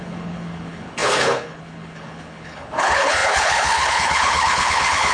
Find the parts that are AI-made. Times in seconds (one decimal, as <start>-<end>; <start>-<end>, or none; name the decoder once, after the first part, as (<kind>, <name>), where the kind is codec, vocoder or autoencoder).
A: 0.0-5.1 (codec, HILCodec)